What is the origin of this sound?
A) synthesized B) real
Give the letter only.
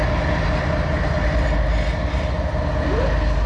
B